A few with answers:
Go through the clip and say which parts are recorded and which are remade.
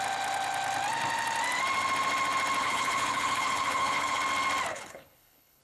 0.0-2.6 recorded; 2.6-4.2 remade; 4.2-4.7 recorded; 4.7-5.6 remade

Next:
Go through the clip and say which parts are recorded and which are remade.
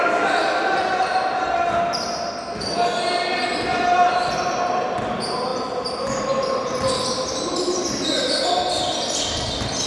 0.0-9.9 recorded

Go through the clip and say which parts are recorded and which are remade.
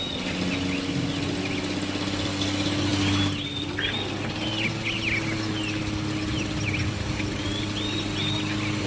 0.0-8.9 recorded